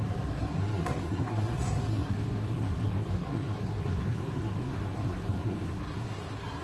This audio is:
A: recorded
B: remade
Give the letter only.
B